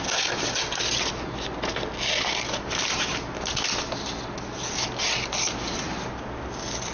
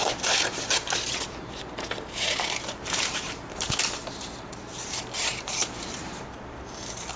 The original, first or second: first